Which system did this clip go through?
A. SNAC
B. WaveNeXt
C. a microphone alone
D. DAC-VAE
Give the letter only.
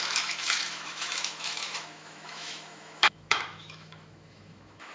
D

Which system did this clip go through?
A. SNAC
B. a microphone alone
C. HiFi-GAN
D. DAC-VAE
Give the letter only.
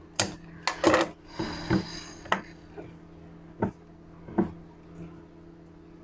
B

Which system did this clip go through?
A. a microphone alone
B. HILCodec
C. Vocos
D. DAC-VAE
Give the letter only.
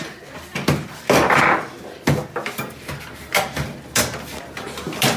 A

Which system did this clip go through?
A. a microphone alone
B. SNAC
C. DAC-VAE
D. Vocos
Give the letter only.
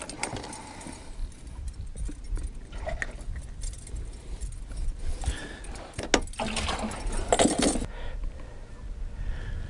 A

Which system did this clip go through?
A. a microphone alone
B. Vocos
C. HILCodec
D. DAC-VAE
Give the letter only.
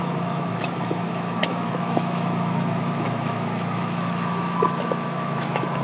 D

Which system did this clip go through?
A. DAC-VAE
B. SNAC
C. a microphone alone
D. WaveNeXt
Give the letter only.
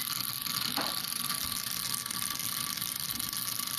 C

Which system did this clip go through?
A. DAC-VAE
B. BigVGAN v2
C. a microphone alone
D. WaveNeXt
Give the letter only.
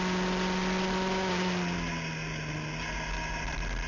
C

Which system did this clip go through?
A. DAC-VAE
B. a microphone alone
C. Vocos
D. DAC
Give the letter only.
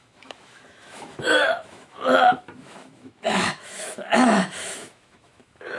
A